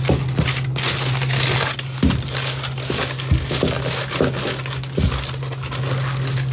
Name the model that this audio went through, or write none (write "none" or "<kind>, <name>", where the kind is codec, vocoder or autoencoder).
none